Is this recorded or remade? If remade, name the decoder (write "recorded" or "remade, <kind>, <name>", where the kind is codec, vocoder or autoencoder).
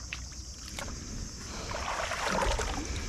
recorded